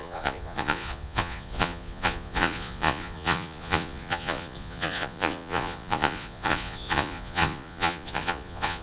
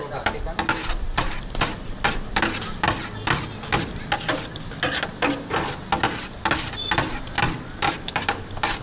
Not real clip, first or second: first